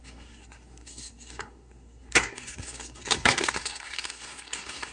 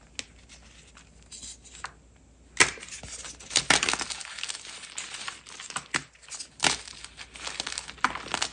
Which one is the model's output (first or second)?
first